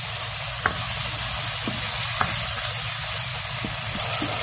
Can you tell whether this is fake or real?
fake